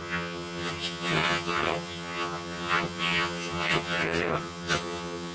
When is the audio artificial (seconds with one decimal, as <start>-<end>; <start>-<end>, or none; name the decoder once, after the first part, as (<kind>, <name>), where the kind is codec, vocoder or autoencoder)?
0.0-5.3 (vocoder, HiFi-GAN)